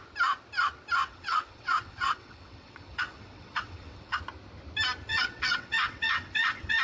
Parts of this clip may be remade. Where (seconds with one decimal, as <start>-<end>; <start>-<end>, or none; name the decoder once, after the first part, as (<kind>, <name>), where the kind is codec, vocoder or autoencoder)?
1.0-4.2 (vocoder, WaveNeXt); 5.1-6.8